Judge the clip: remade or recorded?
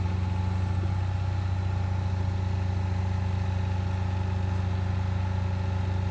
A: recorded